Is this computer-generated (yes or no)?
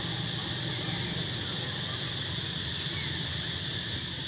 no